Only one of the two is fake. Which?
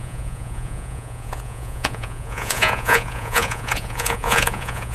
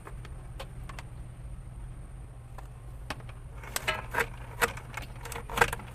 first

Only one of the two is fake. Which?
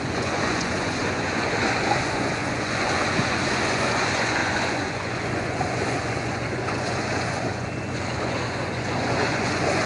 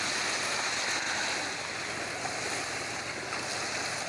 first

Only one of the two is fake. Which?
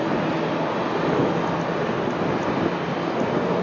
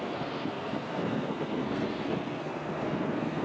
second